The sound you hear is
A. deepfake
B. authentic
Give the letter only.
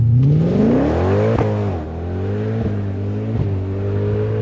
B